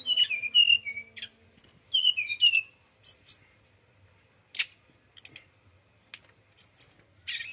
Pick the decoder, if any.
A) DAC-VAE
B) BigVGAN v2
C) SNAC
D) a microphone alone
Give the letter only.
D